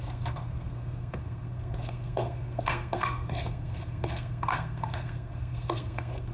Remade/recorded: remade